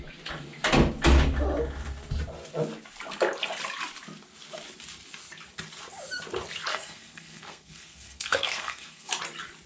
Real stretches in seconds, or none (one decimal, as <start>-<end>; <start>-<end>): 0.0-6.7; 9.1-9.7